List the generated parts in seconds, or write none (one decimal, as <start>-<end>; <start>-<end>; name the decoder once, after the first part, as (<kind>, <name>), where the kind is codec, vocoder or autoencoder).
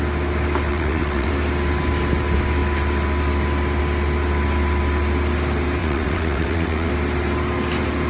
0.7-1.3 (vocoder, WaveNeXt); 5.8-6.9